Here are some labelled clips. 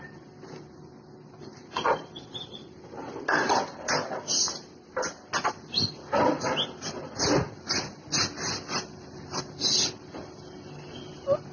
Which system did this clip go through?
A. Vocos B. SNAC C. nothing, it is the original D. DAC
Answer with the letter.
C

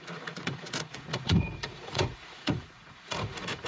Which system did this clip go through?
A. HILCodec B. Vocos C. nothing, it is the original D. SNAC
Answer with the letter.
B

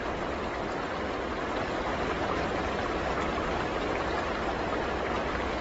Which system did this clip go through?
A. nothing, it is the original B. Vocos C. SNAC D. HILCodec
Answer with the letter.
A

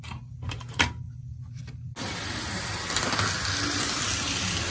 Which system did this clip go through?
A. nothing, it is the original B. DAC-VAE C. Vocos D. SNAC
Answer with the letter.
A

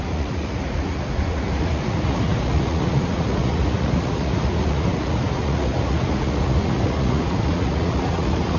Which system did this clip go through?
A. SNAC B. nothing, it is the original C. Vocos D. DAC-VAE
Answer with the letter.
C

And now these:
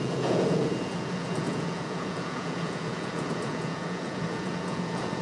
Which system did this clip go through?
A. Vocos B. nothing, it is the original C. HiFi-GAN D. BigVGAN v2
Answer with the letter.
A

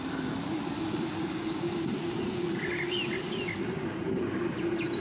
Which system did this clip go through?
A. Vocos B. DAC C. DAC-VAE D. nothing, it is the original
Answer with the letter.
D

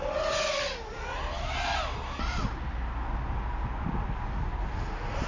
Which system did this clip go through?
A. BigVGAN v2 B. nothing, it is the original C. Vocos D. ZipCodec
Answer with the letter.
B